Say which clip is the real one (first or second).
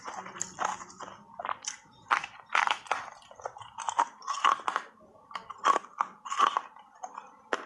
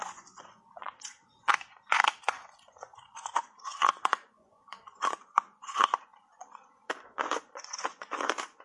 first